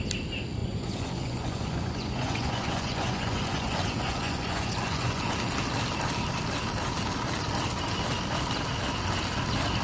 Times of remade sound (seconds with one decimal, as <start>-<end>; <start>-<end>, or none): 0.6-5.3